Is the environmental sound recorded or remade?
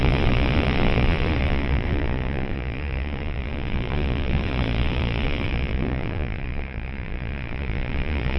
remade